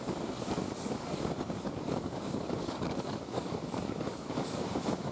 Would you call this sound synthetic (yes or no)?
yes